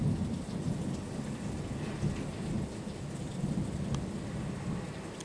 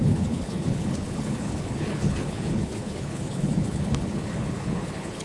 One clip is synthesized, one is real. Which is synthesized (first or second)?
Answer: second